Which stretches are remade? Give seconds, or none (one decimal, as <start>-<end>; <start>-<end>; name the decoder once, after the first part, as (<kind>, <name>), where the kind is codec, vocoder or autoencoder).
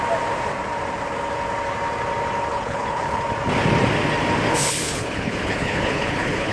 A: 2.5-3.2 (codec, HILCodec); 4.5-6.5